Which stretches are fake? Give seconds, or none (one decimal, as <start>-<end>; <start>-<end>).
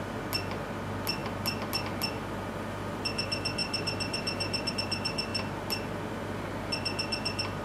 3.6-4.7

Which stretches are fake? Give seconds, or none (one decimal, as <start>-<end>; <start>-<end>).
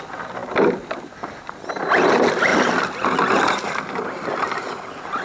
none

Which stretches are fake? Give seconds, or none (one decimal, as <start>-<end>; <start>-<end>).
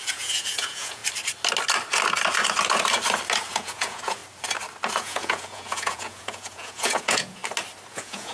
0.0-1.0; 3.5-4.2; 4.9-7.4; 7.9-8.3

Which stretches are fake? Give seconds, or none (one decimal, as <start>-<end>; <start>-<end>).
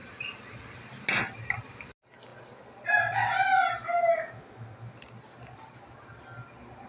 none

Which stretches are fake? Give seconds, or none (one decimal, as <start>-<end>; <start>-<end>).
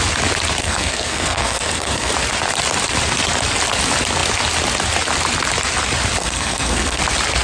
0.6-2.1; 6.2-7.0